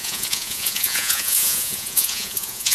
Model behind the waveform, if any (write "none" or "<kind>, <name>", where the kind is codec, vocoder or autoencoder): vocoder, Vocos